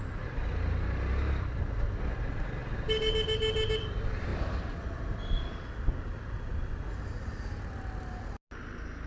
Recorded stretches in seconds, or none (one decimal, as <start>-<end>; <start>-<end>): 0.0-9.1